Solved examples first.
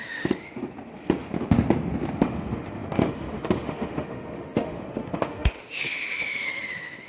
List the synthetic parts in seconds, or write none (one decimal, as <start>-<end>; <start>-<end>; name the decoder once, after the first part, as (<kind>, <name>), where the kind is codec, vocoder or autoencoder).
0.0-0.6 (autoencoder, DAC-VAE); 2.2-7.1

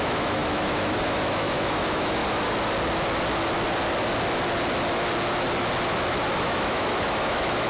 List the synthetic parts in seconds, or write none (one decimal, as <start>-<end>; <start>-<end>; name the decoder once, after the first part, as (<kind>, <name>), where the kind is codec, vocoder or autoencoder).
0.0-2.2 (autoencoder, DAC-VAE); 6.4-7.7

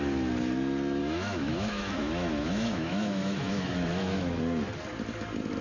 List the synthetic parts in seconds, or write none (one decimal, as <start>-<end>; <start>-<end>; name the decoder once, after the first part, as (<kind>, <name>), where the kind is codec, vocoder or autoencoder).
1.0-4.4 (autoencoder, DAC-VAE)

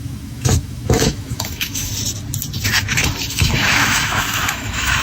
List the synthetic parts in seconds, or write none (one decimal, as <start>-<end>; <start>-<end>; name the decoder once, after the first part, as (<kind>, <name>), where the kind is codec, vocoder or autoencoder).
0.0-1.9 (autoencoder, DAC-VAE); 3.3-5.0